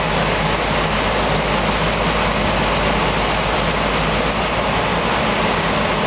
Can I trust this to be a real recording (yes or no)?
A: yes